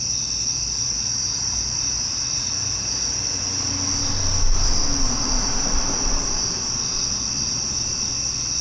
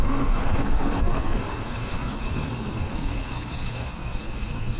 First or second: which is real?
first